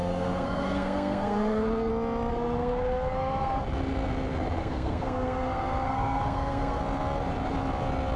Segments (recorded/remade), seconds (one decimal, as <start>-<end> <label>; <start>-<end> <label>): 0.0-1.9 remade; 1.9-2.3 recorded; 2.3-3.6 remade; 3.6-4.6 recorded; 4.6-6.8 remade; 6.8-8.2 recorded